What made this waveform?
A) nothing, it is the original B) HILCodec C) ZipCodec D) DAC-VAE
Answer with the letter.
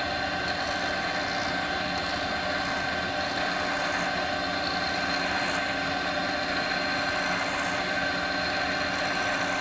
A